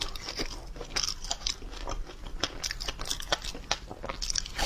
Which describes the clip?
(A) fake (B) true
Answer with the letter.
B